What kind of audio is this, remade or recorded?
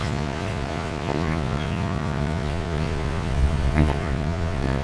remade